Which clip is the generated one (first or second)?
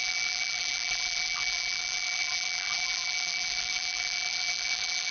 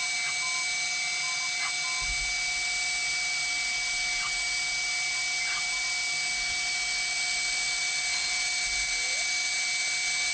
first